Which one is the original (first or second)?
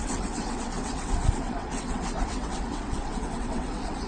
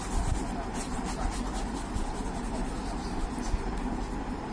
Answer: second